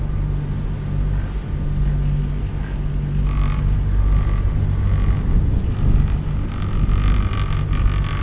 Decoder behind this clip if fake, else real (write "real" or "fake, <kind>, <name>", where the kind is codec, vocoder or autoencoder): real